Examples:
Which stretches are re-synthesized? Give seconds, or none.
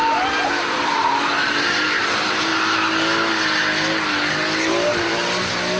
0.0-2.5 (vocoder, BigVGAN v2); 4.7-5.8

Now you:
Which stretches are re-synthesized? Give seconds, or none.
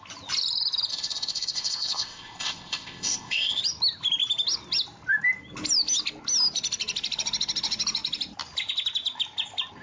0.9-3.6 (codec, ZipCodec)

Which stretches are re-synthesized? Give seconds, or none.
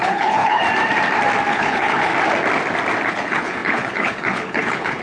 0.0-0.6 (codec, HILCodec); 1.5-2.1; 3.1-5.0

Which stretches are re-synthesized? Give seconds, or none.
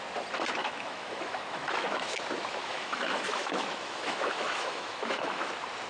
0.6-2.2 (autoencoder, DAC-VAE); 2.6-5.5